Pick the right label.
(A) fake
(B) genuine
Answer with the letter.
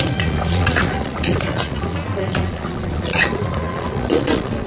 A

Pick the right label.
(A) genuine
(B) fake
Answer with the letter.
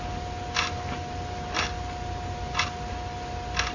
A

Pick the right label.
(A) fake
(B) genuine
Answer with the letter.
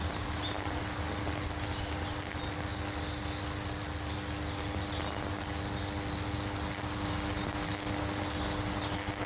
B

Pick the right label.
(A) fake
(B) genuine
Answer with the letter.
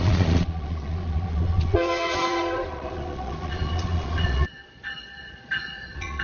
A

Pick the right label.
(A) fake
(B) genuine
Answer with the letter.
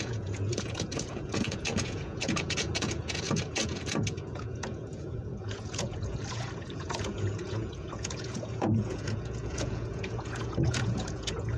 A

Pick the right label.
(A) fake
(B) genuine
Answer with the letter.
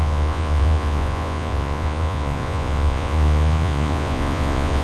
A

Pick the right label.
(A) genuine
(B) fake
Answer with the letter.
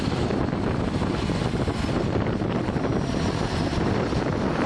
A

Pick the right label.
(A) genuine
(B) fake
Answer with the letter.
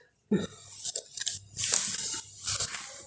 A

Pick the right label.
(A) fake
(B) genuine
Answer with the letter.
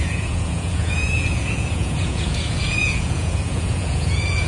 A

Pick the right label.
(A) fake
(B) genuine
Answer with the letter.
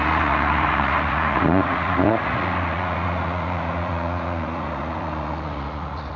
A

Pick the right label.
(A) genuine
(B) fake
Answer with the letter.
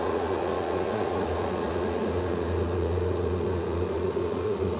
B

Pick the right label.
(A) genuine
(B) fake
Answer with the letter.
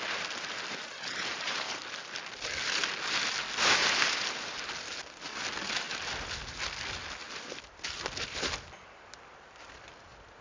A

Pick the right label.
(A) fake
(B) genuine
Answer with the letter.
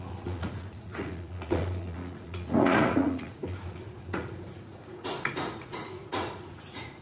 A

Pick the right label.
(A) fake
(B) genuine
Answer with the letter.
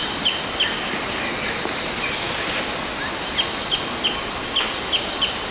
B